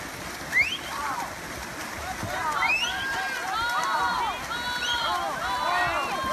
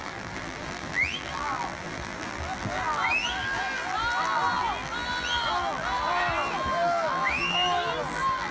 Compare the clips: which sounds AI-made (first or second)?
second